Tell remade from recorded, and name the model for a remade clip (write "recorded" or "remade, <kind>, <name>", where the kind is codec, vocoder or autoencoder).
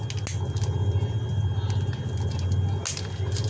recorded